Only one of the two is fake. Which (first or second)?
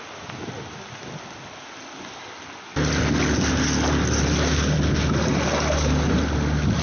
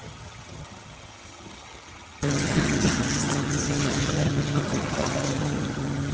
second